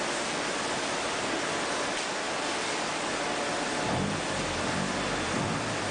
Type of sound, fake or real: real